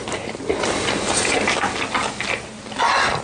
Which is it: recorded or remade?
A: recorded